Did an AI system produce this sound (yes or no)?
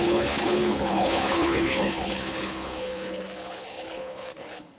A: yes